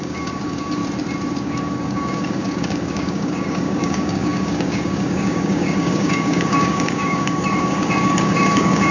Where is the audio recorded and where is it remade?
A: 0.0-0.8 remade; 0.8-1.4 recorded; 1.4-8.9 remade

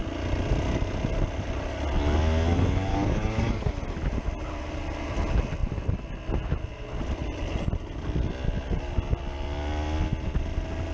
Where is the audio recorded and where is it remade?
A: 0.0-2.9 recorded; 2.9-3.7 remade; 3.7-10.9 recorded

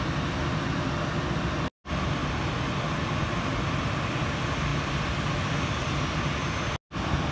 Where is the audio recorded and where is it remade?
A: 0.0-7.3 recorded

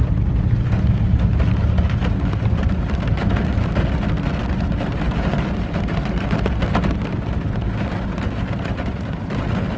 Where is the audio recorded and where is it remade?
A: 0.0-9.8 recorded

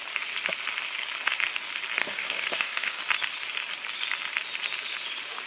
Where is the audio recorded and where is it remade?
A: 0.0-2.0 recorded; 2.0-3.0 remade; 3.0-5.5 recorded